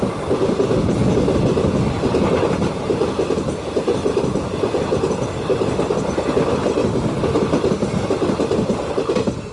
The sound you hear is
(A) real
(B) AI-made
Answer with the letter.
A